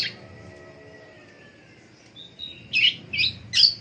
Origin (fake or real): real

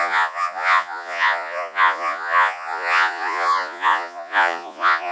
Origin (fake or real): fake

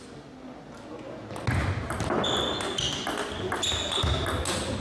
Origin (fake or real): real